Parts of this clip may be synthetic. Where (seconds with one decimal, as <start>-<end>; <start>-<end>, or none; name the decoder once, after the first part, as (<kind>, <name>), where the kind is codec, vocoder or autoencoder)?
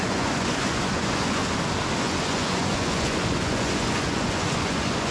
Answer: 0.0-1.4 (vocoder, Vocos); 2.0-5.1